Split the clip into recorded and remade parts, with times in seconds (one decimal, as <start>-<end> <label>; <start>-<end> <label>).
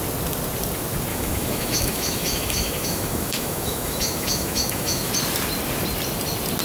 0.0-1.1 recorded; 1.1-5.1 remade; 5.1-6.6 recorded